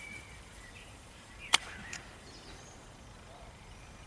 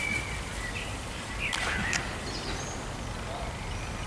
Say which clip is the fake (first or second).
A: first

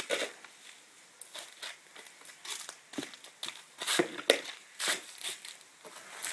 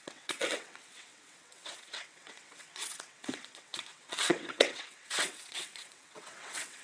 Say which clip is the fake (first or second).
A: second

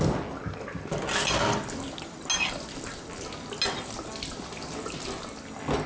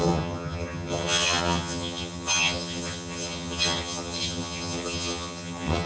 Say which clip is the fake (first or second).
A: second